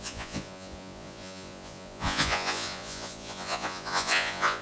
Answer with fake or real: fake